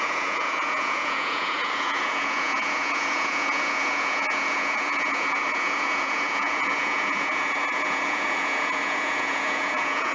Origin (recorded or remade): remade